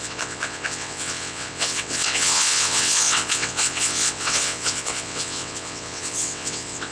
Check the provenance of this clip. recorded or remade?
remade